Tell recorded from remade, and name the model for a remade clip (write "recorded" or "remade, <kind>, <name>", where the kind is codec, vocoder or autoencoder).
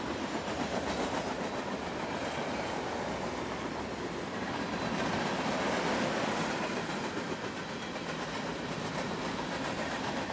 recorded